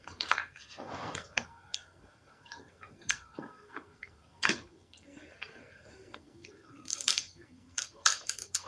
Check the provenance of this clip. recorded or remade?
remade